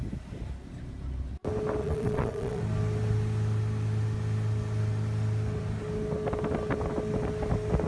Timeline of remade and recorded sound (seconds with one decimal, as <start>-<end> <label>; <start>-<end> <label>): 0.0-1.8 recorded; 1.8-2.6 remade; 2.6-7.9 recorded